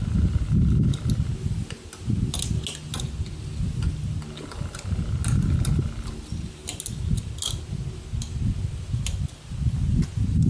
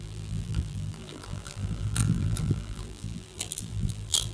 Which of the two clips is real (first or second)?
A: first